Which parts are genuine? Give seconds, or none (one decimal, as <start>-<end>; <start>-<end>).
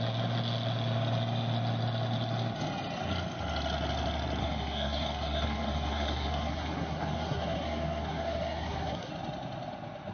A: 0.0-4.4; 9.1-10.1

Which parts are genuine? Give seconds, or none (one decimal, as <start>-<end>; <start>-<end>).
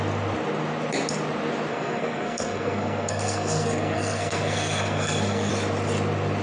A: 0.0-1.7; 5.5-6.4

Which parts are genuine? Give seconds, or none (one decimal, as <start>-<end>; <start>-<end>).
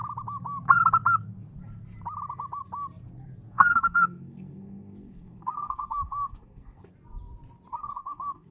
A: 0.0-3.5; 6.9-7.7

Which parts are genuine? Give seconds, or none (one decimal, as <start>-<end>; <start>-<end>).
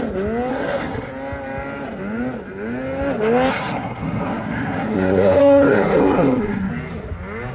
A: 0.0-0.5; 1.1-3.5; 6.7-7.5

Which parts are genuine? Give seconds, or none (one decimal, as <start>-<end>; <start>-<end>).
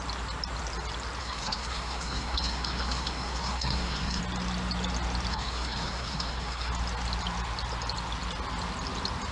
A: 0.0-1.2; 4.2-5.3; 6.7-9.3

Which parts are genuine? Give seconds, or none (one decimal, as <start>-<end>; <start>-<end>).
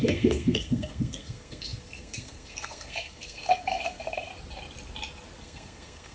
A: 4.3-5.4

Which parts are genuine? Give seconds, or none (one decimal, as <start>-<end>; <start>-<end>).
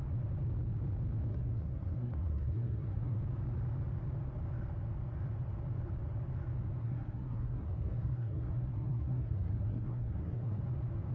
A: 0.0-1.3; 3.2-6.8; 10.6-11.1